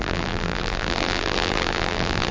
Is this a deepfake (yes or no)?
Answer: yes